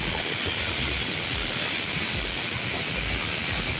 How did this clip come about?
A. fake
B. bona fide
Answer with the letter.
B